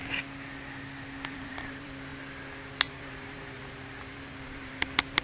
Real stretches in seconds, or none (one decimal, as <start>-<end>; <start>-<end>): 0.0-1.3; 2.1-2.7